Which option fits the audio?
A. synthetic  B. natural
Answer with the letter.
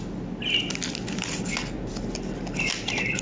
B